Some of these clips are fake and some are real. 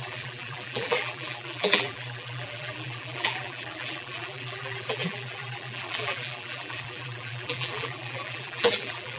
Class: fake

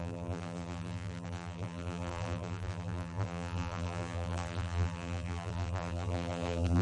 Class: fake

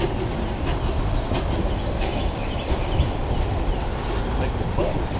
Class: real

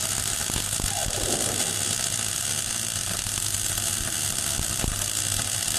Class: real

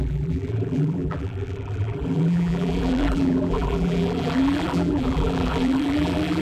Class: fake